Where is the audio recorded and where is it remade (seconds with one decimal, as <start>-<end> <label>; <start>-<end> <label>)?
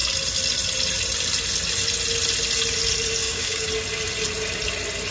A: 0.0-3.2 recorded; 3.2-3.7 remade; 3.7-5.1 recorded